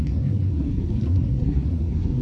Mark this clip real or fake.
fake